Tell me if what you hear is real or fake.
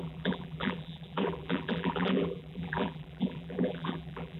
fake